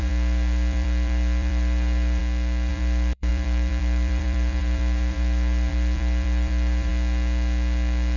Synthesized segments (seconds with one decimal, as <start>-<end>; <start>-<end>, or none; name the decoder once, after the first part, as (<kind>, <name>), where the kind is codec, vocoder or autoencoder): 0.0-2.2 (vocoder, BigVGAN v2); 2.7-6.9